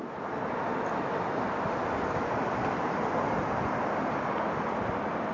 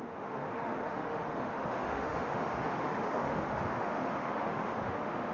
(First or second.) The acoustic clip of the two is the first